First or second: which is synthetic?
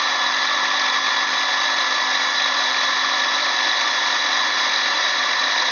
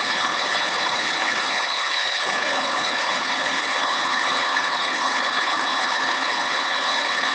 second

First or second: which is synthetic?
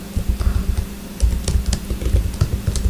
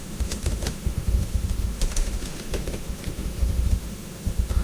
second